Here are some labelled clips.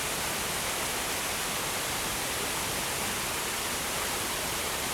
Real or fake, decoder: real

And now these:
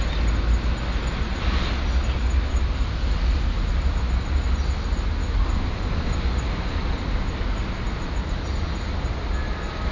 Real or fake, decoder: real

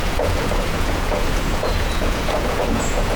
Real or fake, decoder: fake, vocoder, Vocos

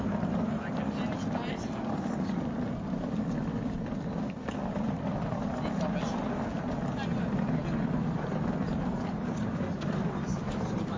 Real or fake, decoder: real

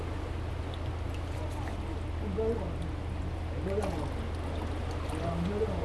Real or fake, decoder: real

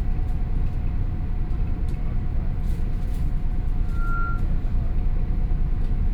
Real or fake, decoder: real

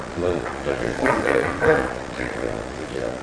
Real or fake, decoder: fake, vocoder, Vocos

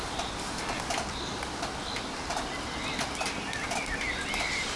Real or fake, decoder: real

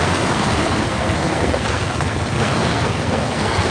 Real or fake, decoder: fake, codec, SNAC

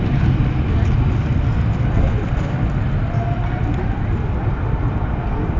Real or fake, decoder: fake, vocoder, BigVGAN v2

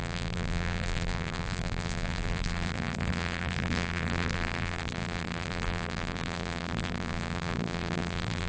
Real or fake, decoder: fake, vocoder, BigVGAN v2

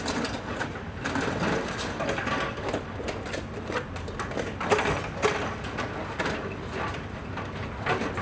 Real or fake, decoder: real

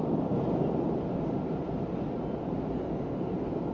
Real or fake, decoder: real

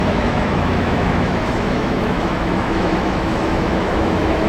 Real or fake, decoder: fake, autoencoder, DAC-VAE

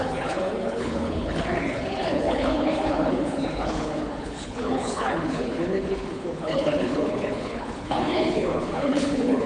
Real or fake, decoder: fake, codec, HILCodec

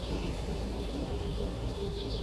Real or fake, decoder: fake, codec, SNAC